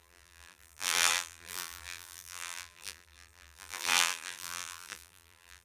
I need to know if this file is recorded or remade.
remade